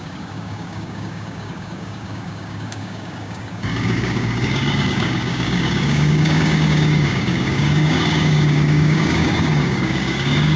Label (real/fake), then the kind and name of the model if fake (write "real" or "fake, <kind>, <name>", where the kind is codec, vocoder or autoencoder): fake, codec, DAC